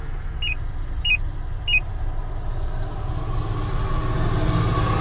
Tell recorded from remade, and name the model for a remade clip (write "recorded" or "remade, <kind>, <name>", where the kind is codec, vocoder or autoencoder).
recorded